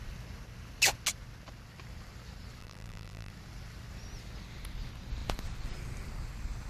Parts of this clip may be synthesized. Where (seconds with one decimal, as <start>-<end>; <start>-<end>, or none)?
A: 2.6-3.3

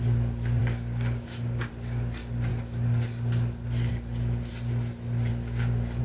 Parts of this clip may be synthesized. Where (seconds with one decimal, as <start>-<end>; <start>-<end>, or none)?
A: 0.6-1.7; 5.3-6.0

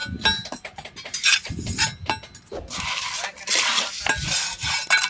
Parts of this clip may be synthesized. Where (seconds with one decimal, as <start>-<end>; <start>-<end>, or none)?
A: none

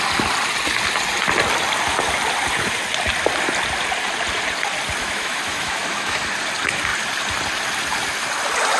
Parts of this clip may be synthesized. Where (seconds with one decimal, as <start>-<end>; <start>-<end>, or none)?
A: 5.0-6.3

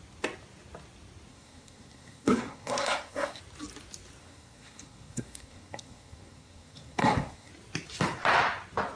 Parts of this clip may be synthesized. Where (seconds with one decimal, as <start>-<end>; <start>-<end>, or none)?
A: 1.3-3.4; 4.2-7.5

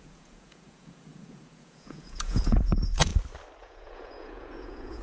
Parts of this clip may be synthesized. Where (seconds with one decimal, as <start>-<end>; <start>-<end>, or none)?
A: 0.0-3.1; 3.6-5.0

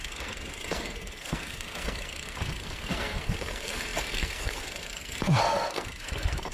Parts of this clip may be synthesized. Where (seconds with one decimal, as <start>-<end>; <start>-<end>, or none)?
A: 0.0-6.5

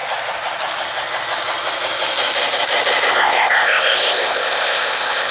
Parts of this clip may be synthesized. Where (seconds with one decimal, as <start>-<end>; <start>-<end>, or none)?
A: 3.1-5.3